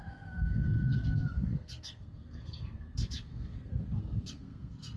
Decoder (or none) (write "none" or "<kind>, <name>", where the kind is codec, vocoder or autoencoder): codec, SNAC